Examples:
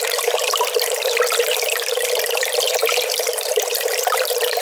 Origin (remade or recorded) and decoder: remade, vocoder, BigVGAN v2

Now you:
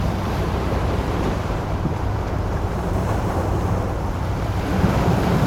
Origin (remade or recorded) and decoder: remade, vocoder, BigVGAN v2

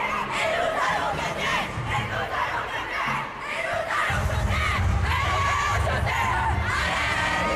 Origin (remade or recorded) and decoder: remade, vocoder, BigVGAN v2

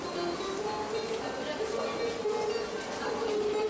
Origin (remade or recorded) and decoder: recorded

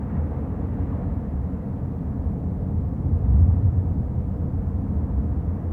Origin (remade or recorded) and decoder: recorded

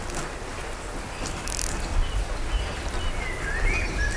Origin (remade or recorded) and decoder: recorded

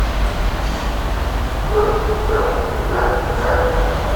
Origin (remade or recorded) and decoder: remade, vocoder, BigVGAN v2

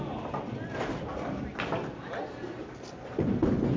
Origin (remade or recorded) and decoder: recorded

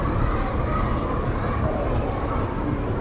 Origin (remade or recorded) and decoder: remade, vocoder, BigVGAN v2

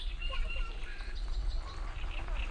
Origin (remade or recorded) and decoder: recorded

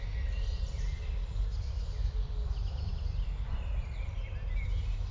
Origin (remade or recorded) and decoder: recorded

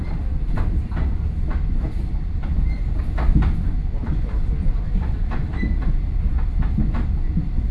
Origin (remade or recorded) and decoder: recorded